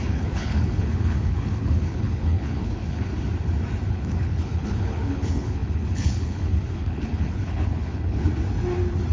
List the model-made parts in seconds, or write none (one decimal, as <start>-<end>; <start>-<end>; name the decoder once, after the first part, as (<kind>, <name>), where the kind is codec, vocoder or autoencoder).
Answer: 0.0-3.1 (codec, HILCodec); 3.9-8.3